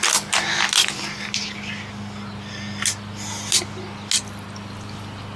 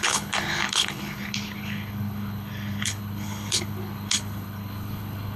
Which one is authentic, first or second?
first